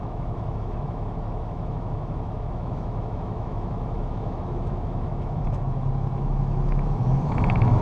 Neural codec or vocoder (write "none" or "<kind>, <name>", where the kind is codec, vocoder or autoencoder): autoencoder, DAC-VAE